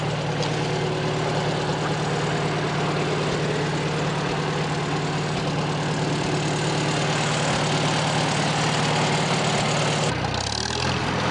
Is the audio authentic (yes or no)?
yes